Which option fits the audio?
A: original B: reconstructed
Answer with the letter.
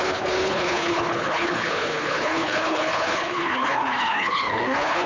B